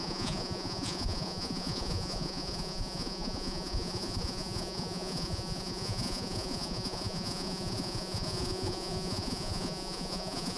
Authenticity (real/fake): fake